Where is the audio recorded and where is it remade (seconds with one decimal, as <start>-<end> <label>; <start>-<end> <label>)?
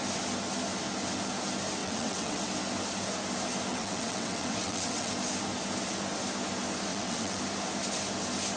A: 0.0-1.8 recorded; 1.8-2.5 remade; 2.5-3.7 recorded; 3.7-5.1 remade; 5.1-6.9 recorded; 6.9-7.4 remade; 7.4-8.6 recorded